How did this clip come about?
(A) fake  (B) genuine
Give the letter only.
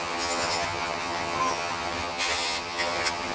A